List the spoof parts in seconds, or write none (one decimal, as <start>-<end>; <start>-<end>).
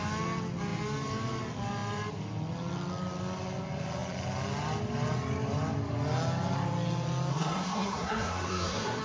7.3-9.0